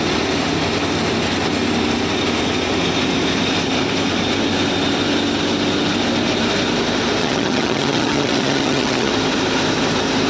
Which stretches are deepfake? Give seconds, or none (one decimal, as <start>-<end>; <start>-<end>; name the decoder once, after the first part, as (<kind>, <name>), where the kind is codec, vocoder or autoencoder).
7.2-9.1 (vocoder, HiFi-GAN)